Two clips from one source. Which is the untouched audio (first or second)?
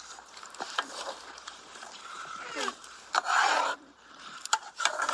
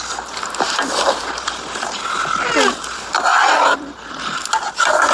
second